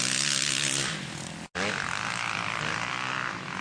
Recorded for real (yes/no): yes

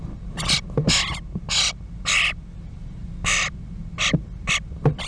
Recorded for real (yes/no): yes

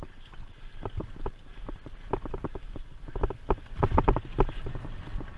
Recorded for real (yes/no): yes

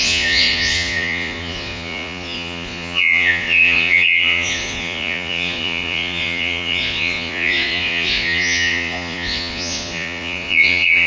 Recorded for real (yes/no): no